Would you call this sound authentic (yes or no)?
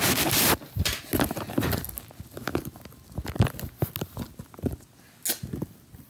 yes